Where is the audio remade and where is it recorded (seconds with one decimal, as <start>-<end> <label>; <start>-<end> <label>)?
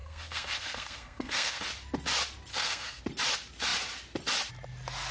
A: 0.0-1.6 remade; 1.6-2.5 recorded; 2.5-3.0 remade; 3.0-5.1 recorded